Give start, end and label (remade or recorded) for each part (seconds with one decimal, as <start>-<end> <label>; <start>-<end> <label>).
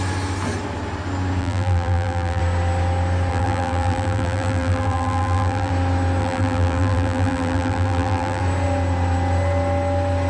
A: 0.0-1.4 recorded; 1.4-2.4 remade; 2.4-3.3 recorded; 3.3-5.7 remade; 5.7-6.2 recorded; 6.2-8.4 remade; 8.4-10.3 recorded